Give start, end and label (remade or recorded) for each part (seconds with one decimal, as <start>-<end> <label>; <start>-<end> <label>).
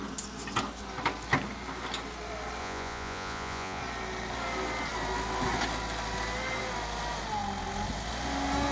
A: 0.0-2.6 recorded; 2.6-3.8 remade; 3.8-8.7 recorded